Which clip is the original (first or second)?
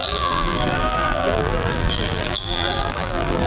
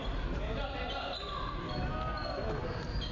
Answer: second